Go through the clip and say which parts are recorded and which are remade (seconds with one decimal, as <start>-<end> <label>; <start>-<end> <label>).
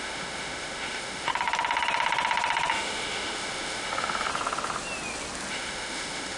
0.0-1.3 remade; 1.3-2.7 recorded; 2.7-4.3 remade; 4.3-5.5 recorded; 5.5-6.4 remade